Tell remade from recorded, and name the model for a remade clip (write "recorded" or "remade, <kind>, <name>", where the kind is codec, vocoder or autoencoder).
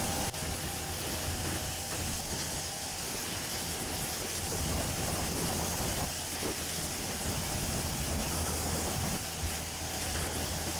recorded